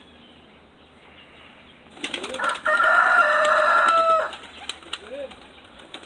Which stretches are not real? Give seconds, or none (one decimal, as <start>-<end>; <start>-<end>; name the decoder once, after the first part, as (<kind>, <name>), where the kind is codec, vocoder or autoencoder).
none